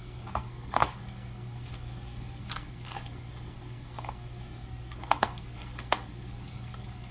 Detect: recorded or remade remade